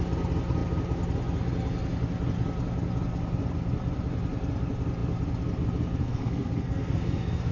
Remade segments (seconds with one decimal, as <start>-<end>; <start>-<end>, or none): 6.0-7.5